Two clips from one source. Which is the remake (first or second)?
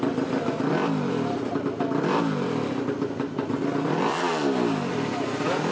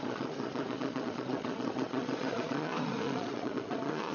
second